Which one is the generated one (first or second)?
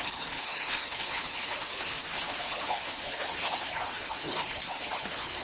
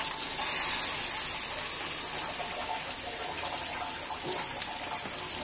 first